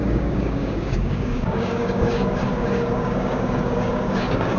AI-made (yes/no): yes